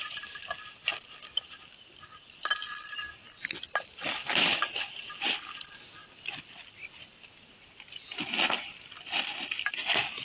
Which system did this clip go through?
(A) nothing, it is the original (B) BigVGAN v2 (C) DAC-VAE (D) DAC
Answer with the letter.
A